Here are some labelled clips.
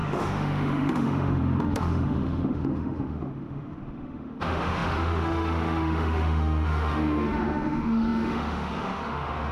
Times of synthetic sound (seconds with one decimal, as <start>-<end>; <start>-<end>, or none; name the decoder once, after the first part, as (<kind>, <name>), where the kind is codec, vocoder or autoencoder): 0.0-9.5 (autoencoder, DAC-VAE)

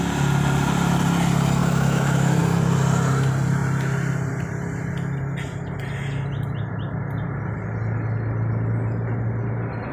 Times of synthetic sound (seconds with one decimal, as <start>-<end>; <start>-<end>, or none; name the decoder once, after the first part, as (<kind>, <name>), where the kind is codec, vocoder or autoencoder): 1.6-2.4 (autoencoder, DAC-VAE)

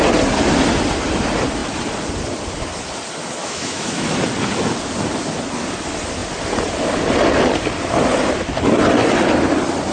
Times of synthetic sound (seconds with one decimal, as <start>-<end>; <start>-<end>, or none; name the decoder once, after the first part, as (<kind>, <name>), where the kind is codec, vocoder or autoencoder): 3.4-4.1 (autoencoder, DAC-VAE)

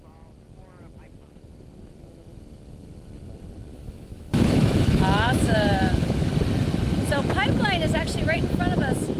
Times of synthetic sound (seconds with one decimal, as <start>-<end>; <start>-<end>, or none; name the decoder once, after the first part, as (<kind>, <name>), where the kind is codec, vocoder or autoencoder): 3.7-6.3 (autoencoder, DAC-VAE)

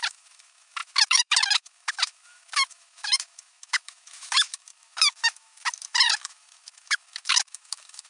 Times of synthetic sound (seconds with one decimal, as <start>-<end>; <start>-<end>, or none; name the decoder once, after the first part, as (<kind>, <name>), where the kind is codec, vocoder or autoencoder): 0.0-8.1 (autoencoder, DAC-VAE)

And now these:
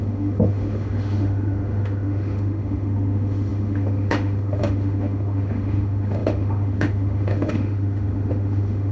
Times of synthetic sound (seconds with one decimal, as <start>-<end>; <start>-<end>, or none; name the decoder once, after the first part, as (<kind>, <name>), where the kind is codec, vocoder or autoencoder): 0.0-8.9 (autoencoder, DAC-VAE)